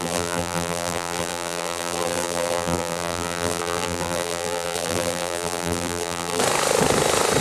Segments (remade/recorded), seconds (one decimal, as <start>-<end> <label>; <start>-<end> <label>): 0.0-6.4 remade; 6.4-7.4 recorded